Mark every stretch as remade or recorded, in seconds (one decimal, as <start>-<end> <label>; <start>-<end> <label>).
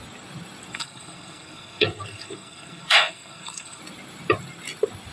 0.0-0.7 recorded; 0.7-3.8 remade; 3.8-5.1 recorded